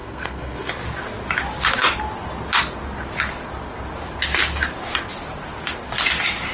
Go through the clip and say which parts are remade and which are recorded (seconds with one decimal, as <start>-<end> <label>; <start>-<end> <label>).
0.0-0.7 remade; 0.7-6.5 recorded